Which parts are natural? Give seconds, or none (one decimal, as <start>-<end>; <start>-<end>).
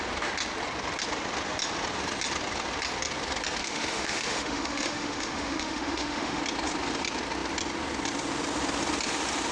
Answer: 0.0-3.6; 6.4-9.5